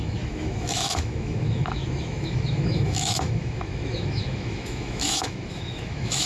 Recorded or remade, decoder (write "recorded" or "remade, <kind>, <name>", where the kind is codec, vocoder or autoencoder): remade, autoencoder, DAC-VAE